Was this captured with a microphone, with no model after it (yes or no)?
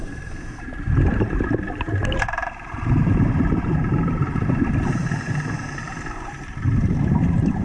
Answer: no